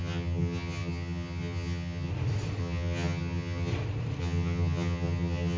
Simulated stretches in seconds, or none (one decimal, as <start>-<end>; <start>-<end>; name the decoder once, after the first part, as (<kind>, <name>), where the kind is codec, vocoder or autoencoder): 0.0-2.1 (vocoder, HiFi-GAN); 2.6-3.7; 4.2-5.6